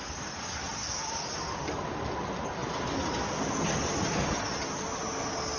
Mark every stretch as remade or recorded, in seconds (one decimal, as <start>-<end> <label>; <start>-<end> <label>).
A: 0.0-5.6 recorded